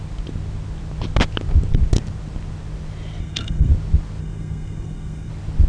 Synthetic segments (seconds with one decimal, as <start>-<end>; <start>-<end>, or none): 3.2-3.7; 4.2-5.3